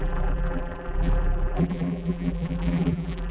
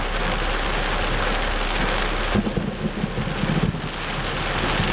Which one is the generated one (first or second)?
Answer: first